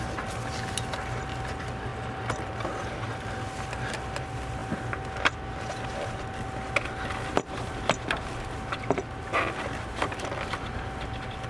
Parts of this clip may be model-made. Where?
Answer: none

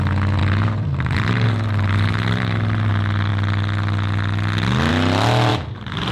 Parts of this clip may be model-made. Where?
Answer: 0.4-2.9 (vocoder, BigVGAN v2); 5.5-6.1

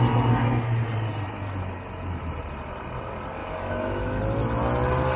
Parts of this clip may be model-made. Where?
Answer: 3.4-4.2 (autoencoder, DAC-VAE)

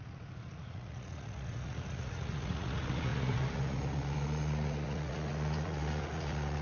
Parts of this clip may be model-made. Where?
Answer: 0.0-6.6 (vocoder, Vocos)

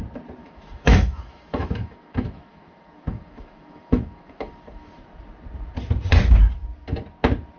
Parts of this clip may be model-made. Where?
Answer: 0.4-5.0 (autoencoder, DAC-VAE)

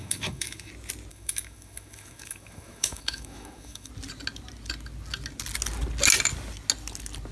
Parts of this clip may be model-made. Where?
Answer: 0.0-0.7 (autoencoder, DAC-VAE); 1.1-3.9